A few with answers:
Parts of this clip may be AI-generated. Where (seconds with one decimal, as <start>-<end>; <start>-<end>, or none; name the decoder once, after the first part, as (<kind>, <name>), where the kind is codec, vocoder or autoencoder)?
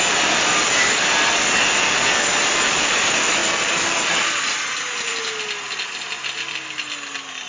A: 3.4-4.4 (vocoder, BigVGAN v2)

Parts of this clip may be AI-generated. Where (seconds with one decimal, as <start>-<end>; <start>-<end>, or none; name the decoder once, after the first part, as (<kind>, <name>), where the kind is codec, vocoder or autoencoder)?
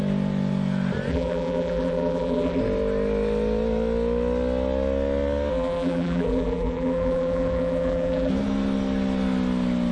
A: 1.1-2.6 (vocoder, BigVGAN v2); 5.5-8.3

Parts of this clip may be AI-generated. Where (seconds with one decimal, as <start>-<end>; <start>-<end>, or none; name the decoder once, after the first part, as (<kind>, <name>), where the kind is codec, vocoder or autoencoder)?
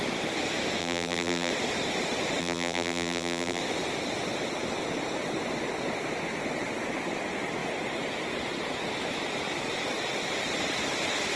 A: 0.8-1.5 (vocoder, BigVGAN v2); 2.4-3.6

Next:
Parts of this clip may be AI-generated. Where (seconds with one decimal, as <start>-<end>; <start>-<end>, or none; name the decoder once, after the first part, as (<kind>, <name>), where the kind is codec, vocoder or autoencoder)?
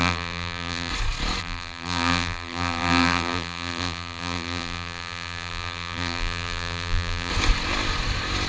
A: 0.0-0.9 (vocoder, BigVGAN v2); 1.4-7.3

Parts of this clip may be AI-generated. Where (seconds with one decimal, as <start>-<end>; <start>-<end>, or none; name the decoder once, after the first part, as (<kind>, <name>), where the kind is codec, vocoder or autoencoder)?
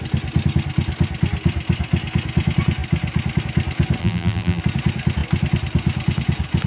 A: 4.0-4.6 (vocoder, BigVGAN v2)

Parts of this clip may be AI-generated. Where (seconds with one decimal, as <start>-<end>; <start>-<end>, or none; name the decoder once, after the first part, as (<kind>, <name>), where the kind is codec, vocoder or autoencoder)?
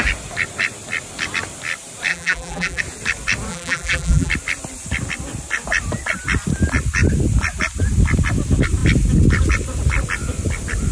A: 2.1-2.8 (vocoder, BigVGAN v2); 3.5-4.3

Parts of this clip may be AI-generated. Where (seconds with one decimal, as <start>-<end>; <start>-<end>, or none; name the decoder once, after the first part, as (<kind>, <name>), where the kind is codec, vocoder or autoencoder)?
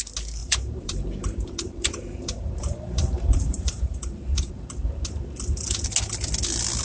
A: 0.4-4.5 (vocoder, BigVGAN v2)